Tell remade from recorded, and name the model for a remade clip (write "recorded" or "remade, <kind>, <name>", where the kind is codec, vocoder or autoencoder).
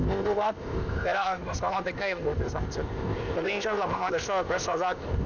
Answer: remade, codec, ZipCodec